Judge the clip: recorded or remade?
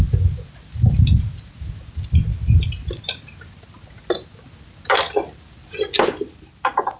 recorded